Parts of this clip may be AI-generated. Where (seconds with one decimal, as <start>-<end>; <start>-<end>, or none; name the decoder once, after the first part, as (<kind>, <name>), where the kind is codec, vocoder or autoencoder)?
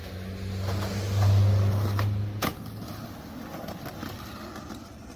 none